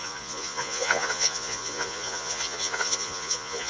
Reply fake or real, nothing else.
fake